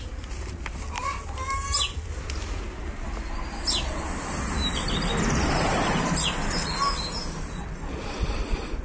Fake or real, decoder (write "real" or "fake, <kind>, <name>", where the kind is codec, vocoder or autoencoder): real